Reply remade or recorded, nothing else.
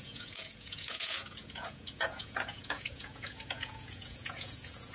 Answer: remade